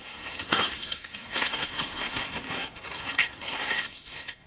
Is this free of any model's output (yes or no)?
no